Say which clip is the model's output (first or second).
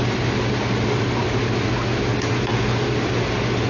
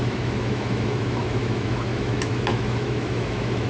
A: second